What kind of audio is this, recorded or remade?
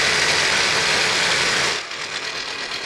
recorded